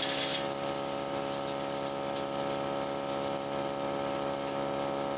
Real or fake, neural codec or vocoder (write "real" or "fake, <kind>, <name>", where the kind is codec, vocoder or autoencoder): real